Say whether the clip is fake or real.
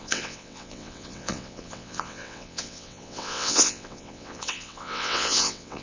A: fake